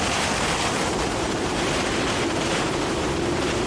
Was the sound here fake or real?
real